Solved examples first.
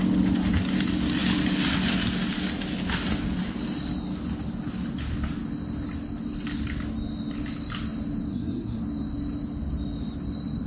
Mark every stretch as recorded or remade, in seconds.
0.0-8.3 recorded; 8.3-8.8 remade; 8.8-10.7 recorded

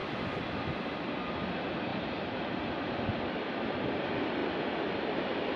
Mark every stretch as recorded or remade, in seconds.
0.0-1.9 recorded; 1.9-2.7 remade; 2.7-3.1 recorded; 3.1-3.8 remade; 3.8-5.6 recorded

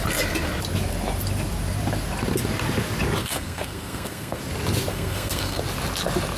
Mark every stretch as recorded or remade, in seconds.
0.0-3.2 recorded; 3.2-4.4 remade; 4.4-4.9 recorded; 4.9-5.6 remade; 5.6-6.4 recorded

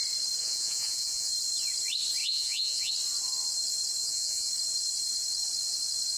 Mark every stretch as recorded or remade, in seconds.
0.0-0.4 recorded; 0.4-1.3 remade; 1.3-2.2 recorded; 2.2-2.9 remade; 2.9-4.0 recorded; 4.0-4.5 remade; 4.5-6.2 recorded

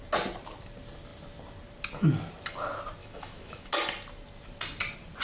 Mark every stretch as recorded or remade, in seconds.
0.0-3.0 recorded; 3.0-3.7 remade; 3.7-5.2 recorded

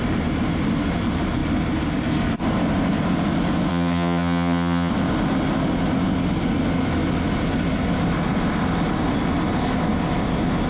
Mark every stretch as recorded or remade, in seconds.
0.0-3.7 recorded; 3.7-4.9 remade; 4.9-10.7 recorded

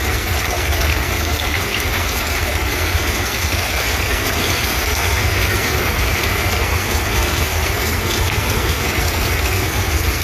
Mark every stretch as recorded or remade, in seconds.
0.0-10.2 remade

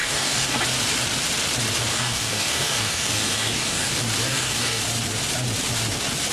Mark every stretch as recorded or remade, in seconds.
0.0-0.6 remade; 0.6-1.9 recorded; 1.9-3.9 remade; 3.9-4.3 recorded; 4.3-4.8 remade; 4.8-6.3 recorded